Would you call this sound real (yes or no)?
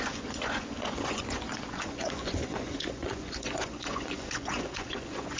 no